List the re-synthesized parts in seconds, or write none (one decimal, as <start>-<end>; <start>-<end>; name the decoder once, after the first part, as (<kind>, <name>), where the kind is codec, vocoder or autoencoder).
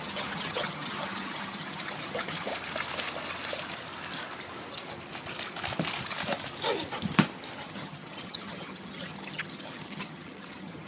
0.0-2.5 (vocoder, HiFi-GAN); 7.7-10.9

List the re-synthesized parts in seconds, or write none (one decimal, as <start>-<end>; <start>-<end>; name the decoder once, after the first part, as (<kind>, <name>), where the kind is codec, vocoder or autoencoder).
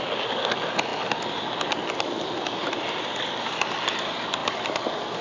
none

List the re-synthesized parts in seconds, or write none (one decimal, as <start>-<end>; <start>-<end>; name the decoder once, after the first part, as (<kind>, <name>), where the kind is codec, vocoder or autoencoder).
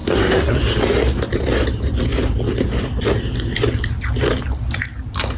0.0-0.6 (codec, SNAC)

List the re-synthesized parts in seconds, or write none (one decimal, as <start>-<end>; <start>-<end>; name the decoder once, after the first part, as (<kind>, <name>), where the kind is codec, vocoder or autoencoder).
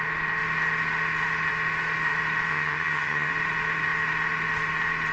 2.5-3.3 (vocoder, HiFi-GAN)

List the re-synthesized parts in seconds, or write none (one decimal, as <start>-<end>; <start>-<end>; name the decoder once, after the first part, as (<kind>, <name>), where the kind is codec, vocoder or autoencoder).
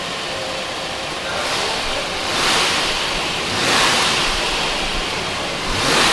0.0-4.9 (vocoder, BigVGAN v2)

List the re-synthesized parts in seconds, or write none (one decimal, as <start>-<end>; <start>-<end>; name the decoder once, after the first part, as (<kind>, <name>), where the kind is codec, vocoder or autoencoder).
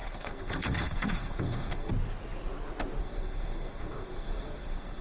0.0-1.9 (codec, SNAC); 3.0-5.0